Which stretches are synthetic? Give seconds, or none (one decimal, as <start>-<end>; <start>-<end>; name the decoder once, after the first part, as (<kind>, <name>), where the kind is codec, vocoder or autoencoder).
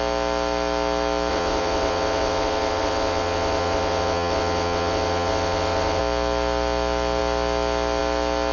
1.3-6.0 (vocoder, WaveNeXt)